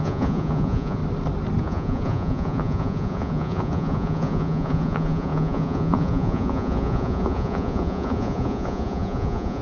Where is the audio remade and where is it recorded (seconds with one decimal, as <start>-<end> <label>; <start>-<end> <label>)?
0.0-1.0 remade; 1.0-1.6 recorded; 1.6-9.6 remade